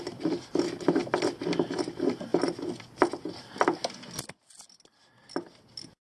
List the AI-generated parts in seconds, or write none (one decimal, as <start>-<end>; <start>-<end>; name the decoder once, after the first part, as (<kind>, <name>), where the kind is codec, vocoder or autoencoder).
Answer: none